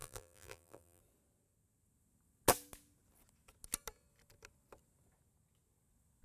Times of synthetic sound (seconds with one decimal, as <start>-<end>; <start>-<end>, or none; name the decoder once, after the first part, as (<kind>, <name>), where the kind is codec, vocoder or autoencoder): 0.0-1.0 (vocoder, BigVGAN v2)